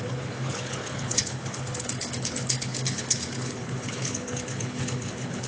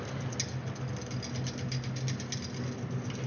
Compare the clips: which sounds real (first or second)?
second